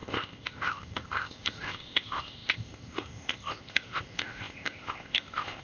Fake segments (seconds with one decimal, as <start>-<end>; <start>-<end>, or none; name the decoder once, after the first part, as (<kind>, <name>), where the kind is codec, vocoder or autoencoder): 0.0-5.6 (codec, ZipCodec)